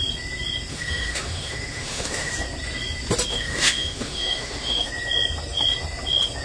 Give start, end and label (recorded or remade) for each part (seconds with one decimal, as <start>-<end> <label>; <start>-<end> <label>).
0.0-0.7 recorded; 0.7-2.3 remade; 2.3-3.3 recorded; 3.3-4.9 remade; 4.9-6.4 recorded